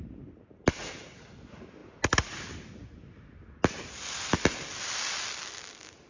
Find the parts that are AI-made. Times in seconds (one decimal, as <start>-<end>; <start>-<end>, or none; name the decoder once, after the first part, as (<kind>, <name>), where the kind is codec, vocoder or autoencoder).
none